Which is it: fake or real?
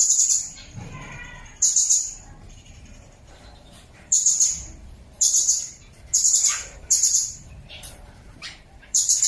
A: fake